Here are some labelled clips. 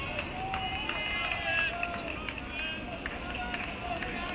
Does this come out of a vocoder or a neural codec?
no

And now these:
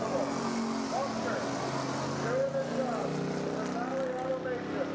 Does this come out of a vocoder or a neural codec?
no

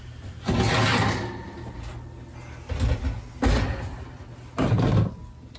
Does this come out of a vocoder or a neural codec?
no